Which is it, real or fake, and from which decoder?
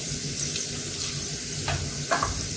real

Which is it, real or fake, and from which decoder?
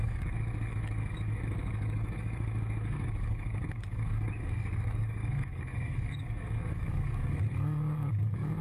fake, codec, DAC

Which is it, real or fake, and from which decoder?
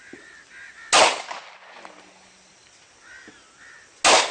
real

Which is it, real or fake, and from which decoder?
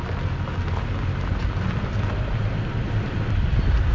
real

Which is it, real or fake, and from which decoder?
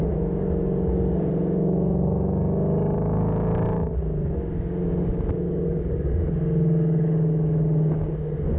fake, codec, DAC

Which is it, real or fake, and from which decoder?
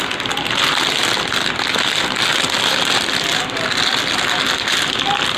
real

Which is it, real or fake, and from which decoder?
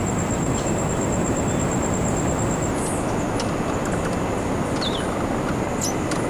real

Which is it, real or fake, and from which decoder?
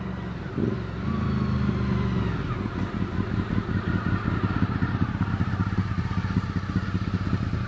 real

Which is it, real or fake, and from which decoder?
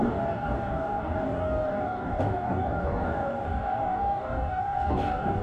fake, codec, DAC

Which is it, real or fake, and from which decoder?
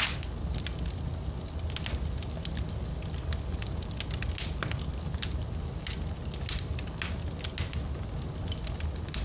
real